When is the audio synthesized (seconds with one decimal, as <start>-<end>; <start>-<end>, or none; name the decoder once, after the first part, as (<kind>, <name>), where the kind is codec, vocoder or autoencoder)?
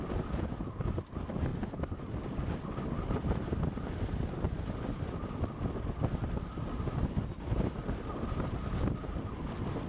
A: none